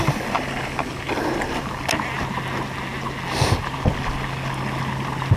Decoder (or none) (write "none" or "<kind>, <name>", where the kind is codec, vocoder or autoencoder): none